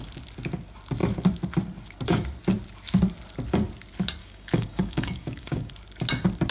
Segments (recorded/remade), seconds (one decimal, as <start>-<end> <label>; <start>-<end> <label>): 0.0-4.2 recorded; 4.2-5.7 remade; 5.7-6.5 recorded